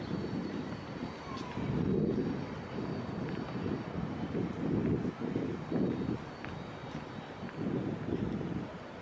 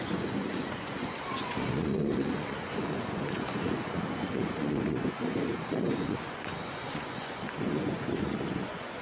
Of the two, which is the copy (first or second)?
second